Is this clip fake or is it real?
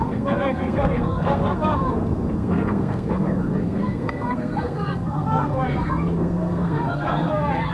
fake